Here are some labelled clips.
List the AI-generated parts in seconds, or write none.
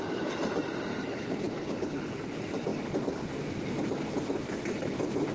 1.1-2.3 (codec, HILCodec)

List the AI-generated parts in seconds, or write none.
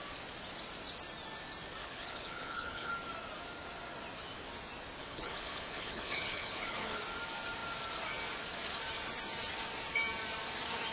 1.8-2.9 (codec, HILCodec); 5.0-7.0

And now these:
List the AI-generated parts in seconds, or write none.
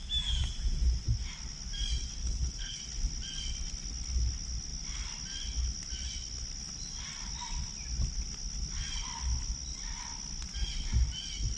2.2-2.8 (codec, HILCodec)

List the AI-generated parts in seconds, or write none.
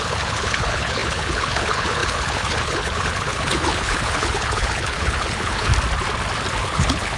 0.0-5.7 (codec, HILCodec); 6.6-7.2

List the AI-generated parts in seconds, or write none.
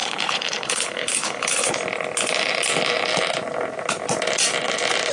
0.0-1.7 (codec, HILCodec)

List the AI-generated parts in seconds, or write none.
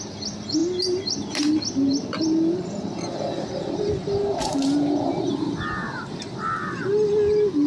none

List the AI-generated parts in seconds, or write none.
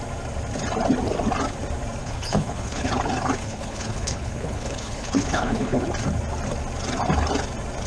2.0-2.9 (codec, HILCodec); 3.4-5.8